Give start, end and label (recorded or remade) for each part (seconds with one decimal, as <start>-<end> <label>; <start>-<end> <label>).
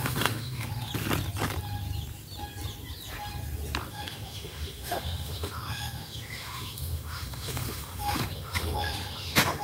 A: 0.0-0.9 remade; 0.9-3.9 recorded; 3.9-9.6 remade